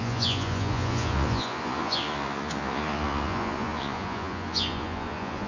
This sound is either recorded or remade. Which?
remade